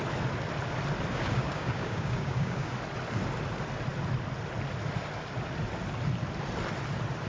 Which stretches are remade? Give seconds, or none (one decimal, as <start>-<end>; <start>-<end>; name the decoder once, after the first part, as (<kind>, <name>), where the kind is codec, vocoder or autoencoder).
1.1-2.7 (codec, DAC)